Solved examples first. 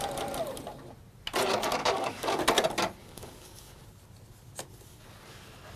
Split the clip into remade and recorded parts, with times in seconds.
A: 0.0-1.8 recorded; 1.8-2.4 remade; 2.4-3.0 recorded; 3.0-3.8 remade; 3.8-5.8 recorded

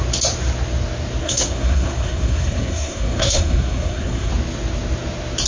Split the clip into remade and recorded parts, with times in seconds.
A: 0.0-1.2 recorded; 1.2-4.3 remade; 4.3-5.5 recorded

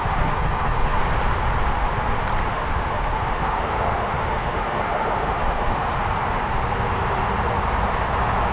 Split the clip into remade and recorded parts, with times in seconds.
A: 0.0-1.0 remade; 1.0-2.5 recorded; 2.5-5.9 remade; 5.9-8.5 recorded

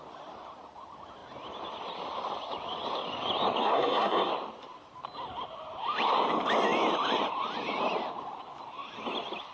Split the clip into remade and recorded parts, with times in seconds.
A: 0.0-3.6 recorded; 3.6-4.3 remade; 4.3-9.5 recorded

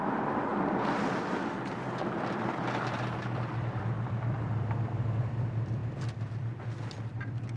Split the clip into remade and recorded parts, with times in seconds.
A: 0.0-7.6 remade

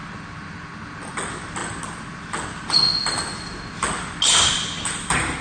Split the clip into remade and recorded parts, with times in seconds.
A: 0.0-5.4 recorded

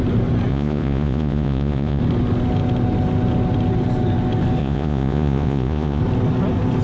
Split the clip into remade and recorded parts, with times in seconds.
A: 0.0-0.5 recorded; 0.5-2.0 remade; 2.0-4.6 recorded; 4.6-6.0 remade; 6.0-6.8 recorded